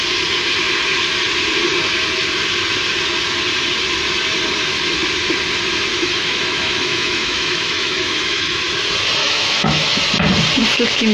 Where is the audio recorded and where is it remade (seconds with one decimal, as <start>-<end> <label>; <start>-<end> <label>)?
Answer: 0.0-5.9 recorded; 5.9-8.6 remade; 8.6-9.2 recorded; 9.2-10.0 remade; 10.0-11.1 recorded

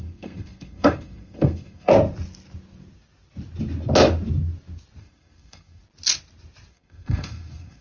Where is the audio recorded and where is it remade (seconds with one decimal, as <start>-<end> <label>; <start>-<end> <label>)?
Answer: 0.0-1.9 remade; 1.9-5.0 recorded; 5.0-5.8 remade; 5.8-6.7 recorded; 6.7-7.8 remade

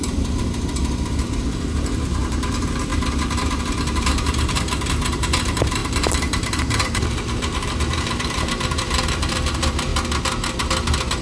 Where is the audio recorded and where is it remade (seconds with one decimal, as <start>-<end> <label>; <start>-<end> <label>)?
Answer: 0.0-2.9 remade; 2.9-3.6 recorded; 3.6-9.9 remade; 9.9-11.2 recorded

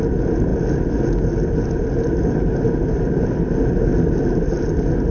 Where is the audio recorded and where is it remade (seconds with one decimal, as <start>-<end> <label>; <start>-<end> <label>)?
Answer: 0.0-5.1 recorded

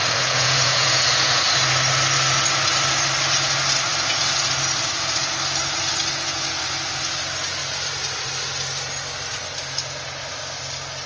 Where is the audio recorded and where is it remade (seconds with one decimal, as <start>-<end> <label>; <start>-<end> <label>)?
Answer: 0.0-1.4 remade; 1.4-11.1 recorded

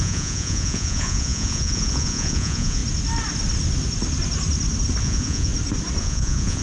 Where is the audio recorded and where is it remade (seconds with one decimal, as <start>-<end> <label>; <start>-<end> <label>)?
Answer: 0.0-2.8 remade; 2.8-5.0 recorded; 5.0-5.5 remade; 5.5-6.0 recorded; 6.0-6.6 remade